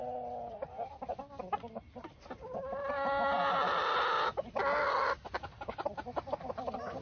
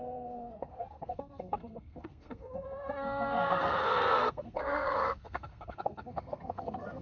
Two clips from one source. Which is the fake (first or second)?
second